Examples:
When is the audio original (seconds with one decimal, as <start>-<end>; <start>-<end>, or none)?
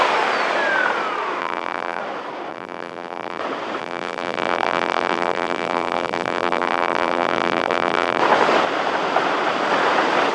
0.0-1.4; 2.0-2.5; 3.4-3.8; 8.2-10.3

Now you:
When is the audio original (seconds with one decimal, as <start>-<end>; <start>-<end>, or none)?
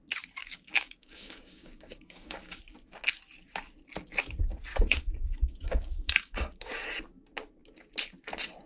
0.0-0.4; 2.6-4.7; 6.7-8.7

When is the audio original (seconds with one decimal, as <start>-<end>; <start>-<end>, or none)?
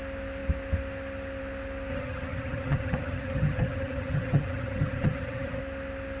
0.0-1.9; 5.6-6.2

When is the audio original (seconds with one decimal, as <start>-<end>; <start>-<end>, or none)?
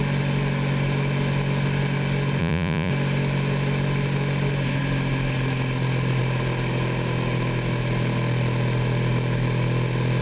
0.0-2.4; 2.9-10.2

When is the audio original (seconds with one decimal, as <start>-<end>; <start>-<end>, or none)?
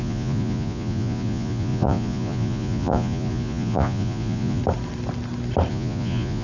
4.6-5.7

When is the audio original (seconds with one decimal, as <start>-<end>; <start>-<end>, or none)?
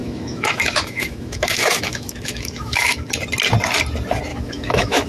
3.1-4.3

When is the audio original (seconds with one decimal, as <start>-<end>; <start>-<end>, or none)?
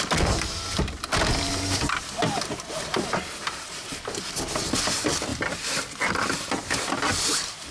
0.0-5.3; 6.1-7.7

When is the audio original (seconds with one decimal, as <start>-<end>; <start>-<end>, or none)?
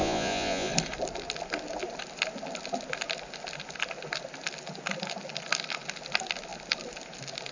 0.7-7.5